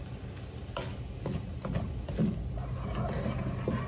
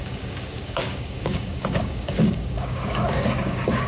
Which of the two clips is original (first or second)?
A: first